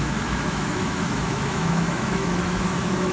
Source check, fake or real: fake